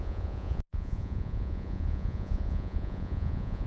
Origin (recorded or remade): remade